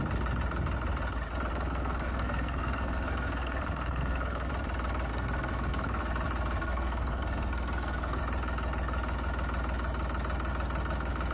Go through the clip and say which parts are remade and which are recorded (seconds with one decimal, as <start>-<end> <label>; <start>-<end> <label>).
0.0-1.5 recorded; 1.5-4.5 remade; 4.5-5.1 recorded; 5.1-6.0 remade; 6.0-6.6 recorded; 6.6-8.2 remade; 8.2-11.3 recorded